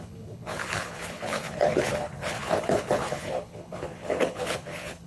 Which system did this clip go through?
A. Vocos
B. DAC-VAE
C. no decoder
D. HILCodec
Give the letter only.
D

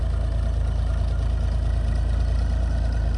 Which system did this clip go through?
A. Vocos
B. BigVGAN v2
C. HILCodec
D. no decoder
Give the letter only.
D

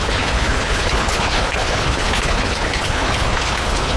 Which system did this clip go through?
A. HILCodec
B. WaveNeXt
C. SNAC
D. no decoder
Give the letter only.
A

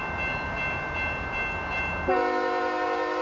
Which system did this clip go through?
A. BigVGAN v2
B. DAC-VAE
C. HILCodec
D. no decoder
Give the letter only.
D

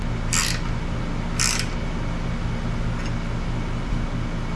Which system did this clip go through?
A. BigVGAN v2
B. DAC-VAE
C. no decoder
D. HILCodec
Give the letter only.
C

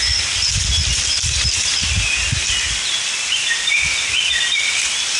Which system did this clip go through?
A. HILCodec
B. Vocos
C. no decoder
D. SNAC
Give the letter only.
C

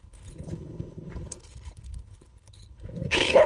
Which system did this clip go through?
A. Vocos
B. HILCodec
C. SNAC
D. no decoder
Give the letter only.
B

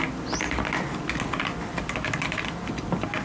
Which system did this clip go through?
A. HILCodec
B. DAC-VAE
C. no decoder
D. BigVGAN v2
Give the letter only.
C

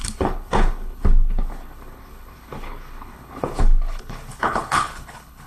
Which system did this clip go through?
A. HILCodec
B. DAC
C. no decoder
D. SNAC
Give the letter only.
A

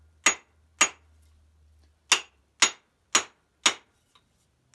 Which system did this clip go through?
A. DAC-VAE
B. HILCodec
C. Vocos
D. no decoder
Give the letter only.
D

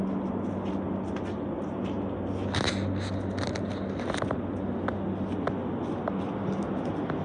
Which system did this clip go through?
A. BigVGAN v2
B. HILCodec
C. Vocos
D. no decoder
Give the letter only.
D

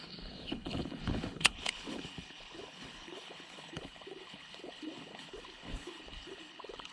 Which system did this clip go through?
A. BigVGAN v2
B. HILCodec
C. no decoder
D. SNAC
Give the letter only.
B